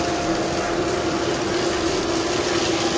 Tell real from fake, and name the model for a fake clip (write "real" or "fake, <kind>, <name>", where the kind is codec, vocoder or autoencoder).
real